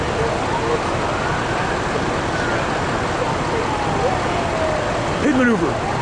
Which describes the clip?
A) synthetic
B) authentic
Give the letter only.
B